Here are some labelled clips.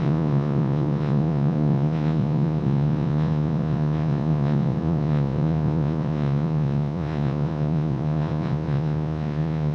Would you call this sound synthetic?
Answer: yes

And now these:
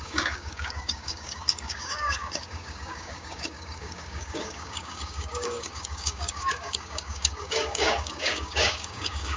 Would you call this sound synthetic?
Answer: yes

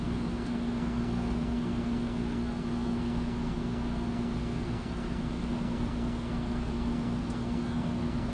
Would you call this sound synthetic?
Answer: yes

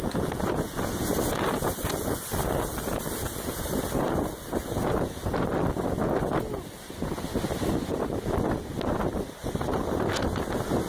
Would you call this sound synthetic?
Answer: no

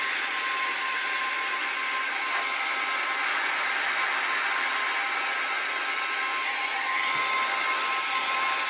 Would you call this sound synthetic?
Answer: no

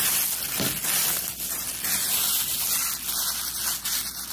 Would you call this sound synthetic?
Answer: no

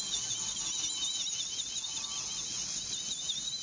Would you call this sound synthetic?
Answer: no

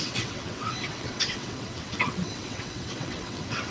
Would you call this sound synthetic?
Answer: yes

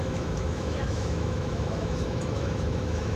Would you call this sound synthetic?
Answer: yes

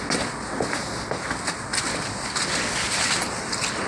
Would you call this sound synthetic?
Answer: no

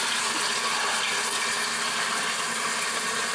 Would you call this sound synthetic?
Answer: no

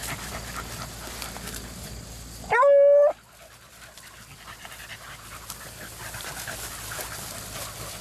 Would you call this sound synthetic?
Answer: no